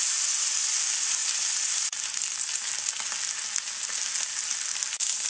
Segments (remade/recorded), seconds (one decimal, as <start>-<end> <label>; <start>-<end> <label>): 0.0-5.3 recorded